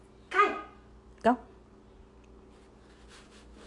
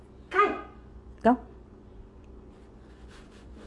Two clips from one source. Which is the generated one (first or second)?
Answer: second